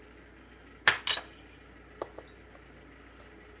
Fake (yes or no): no